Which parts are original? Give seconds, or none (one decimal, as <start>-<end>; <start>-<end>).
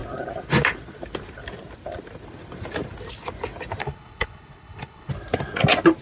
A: 0.0-3.8; 5.1-6.0